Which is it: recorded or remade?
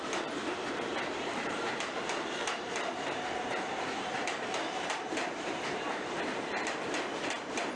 remade